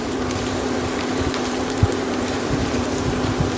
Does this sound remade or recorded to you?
remade